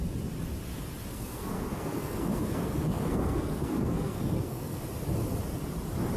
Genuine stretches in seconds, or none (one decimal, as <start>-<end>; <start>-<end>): 0.0-1.1; 4.8-6.2